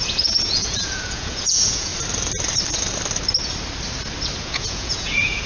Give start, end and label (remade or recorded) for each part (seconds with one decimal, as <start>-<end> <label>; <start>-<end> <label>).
0.0-1.9 remade; 1.9-4.4 recorded; 4.4-5.5 remade